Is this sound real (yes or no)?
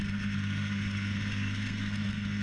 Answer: no